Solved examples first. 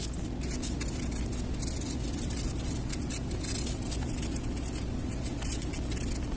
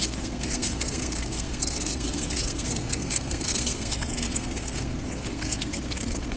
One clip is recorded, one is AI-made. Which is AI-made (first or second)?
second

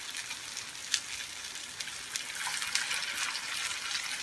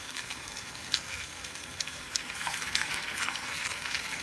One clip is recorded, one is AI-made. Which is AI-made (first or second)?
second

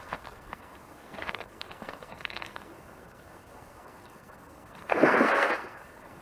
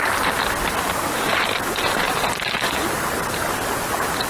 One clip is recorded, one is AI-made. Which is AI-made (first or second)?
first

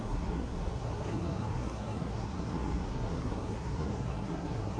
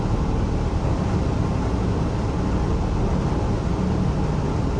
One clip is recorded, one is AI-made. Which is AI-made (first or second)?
first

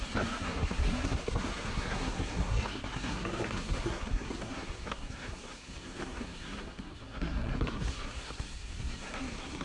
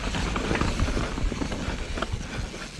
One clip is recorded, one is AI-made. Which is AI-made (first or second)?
first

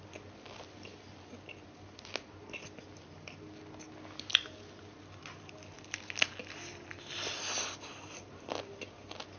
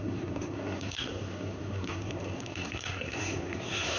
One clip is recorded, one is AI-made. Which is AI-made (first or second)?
second